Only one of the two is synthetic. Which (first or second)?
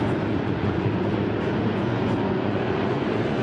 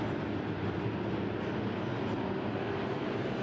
first